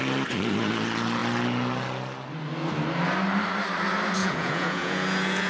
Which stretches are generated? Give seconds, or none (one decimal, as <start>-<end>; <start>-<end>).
4.2-5.5